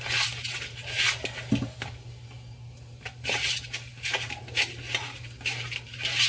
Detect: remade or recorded recorded